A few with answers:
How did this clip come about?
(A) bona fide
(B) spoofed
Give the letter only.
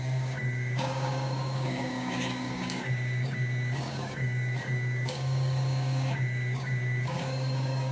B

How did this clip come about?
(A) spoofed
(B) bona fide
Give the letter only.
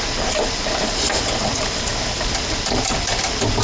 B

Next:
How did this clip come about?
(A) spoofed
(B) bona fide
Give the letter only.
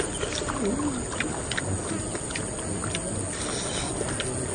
B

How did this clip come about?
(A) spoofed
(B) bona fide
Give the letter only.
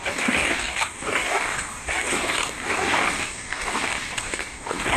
A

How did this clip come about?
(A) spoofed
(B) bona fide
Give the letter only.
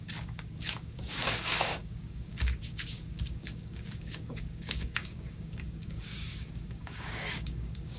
A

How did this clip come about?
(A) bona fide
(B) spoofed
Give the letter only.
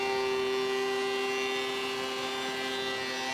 A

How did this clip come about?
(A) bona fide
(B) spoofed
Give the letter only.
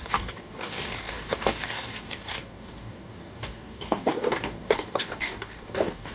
B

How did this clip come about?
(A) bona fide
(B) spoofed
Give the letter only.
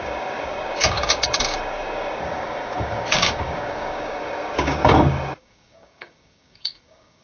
B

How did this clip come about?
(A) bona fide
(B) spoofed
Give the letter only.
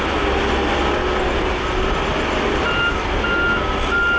A